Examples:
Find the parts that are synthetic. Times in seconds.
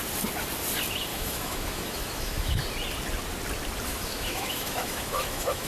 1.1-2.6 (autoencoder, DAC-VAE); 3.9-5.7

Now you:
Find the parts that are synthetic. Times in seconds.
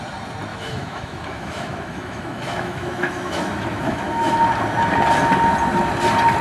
0.5-4.3 (autoencoder, DAC-VAE)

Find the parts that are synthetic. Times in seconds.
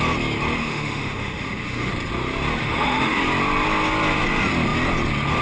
0.6-1.9 (autoencoder, DAC-VAE); 2.6-3.2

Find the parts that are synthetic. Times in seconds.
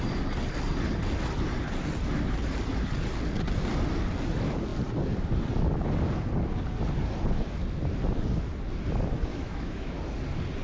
9.3-10.0 (autoencoder, DAC-VAE)